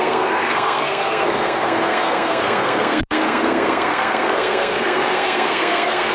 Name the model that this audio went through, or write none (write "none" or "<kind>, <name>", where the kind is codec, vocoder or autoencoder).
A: codec, SNAC